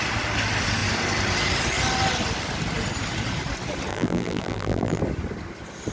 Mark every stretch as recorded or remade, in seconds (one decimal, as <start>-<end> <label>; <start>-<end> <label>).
0.0-3.9 recorded; 3.9-5.0 remade; 5.0-5.9 recorded